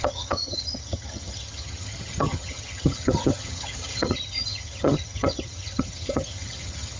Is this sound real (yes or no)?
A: no